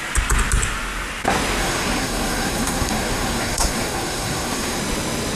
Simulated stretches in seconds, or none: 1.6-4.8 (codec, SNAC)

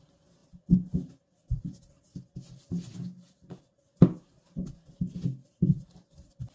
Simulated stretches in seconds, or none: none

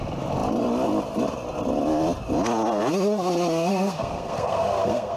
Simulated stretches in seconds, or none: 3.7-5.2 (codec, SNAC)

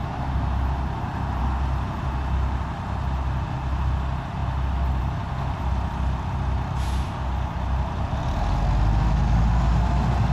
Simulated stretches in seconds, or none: none

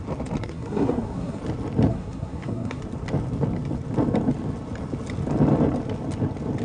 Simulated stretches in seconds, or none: 0.4-1.4 (codec, SNAC); 1.9-2.8

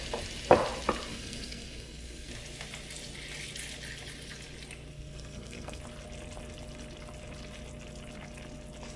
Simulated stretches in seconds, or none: 1.1-2.3 (codec, SNAC); 4.9-5.8